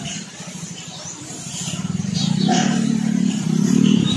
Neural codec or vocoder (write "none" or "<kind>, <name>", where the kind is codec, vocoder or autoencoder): vocoder, BigVGAN v2